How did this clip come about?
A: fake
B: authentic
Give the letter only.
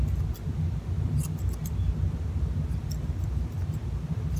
B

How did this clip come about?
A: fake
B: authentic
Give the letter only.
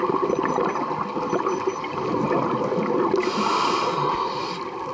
B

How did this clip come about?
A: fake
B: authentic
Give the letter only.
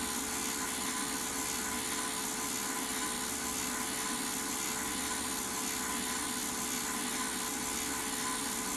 B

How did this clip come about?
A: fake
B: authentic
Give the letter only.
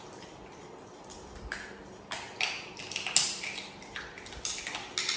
B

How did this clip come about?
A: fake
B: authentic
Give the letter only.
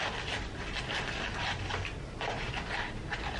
B